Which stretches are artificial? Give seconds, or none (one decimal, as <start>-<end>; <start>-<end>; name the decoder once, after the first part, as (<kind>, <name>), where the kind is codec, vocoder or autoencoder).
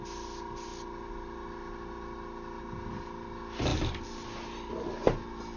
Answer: none